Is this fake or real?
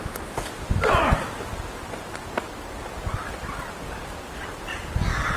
real